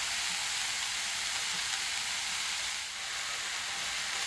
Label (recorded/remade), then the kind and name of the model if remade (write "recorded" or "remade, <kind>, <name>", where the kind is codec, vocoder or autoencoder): recorded